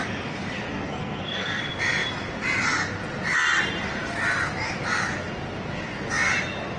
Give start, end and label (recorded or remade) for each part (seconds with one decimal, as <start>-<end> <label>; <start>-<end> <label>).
0.0-0.7 recorded; 0.7-1.6 remade; 1.6-6.8 recorded